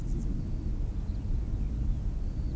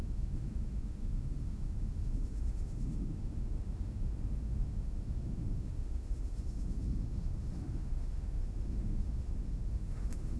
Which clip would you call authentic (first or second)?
first